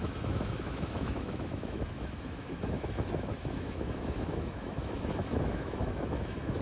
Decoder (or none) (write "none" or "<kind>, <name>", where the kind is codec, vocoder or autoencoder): autoencoder, DAC-VAE